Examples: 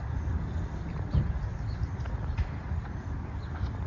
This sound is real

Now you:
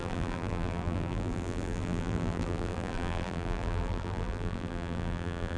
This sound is fake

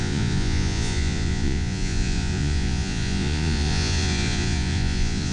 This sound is fake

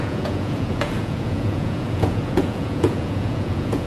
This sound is fake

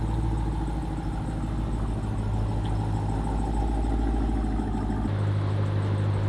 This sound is real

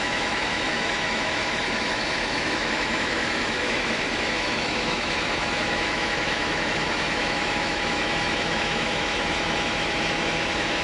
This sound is fake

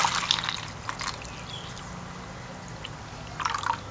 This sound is real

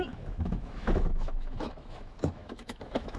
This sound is fake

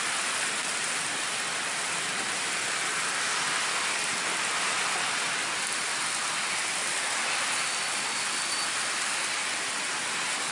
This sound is real